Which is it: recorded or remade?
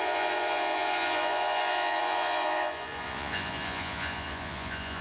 remade